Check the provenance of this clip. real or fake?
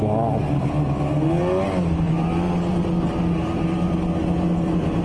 real